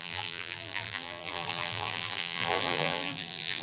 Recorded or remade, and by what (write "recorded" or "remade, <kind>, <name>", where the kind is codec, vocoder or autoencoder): remade, vocoder, BigVGAN v2